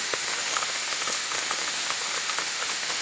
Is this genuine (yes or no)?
no